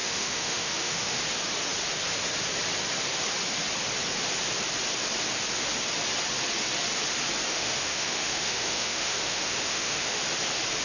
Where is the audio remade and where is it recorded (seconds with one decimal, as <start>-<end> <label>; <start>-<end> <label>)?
0.0-1.2 remade; 1.2-7.5 recorded; 7.5-10.2 remade; 10.2-10.8 recorded